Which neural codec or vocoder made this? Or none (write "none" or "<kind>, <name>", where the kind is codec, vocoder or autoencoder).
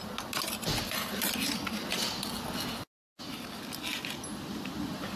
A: none